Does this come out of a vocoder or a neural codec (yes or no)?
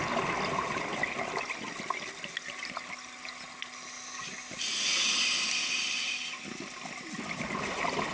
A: no